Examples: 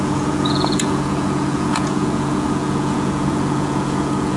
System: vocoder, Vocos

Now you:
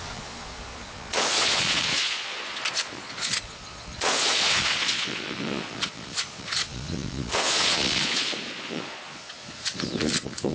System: vocoder, Vocos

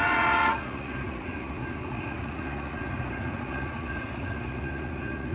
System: vocoder, Vocos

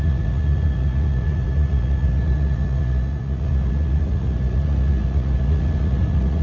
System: vocoder, Vocos